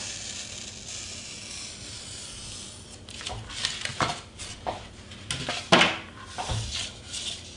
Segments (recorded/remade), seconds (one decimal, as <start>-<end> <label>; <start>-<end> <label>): 0.0-7.6 recorded